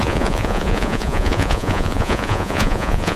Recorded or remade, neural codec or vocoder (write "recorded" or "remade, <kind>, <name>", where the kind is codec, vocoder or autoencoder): remade, vocoder, Vocos